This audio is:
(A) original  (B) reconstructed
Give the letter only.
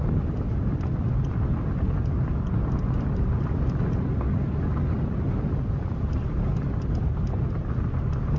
A